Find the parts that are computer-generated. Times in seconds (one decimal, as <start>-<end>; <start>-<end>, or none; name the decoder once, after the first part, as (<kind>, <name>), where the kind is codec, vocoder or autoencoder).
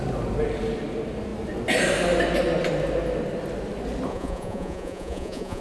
4.1-5.6 (vocoder, Vocos)